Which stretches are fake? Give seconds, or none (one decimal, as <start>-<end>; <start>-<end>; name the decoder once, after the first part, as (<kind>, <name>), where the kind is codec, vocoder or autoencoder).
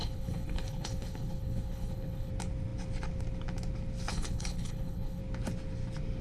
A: 0.0-2.3 (codec, HILCodec); 4.1-5.2